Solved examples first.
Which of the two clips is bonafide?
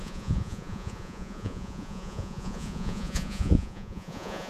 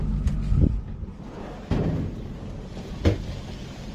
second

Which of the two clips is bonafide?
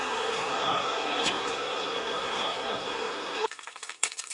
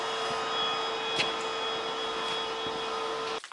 second